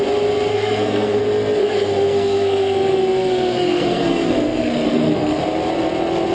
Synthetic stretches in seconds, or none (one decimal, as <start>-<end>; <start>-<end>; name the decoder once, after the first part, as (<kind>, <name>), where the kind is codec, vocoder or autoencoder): 0.5-1.2 (codec, SNAC); 1.6-5.4